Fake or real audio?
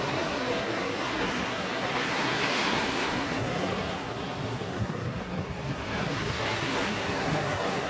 fake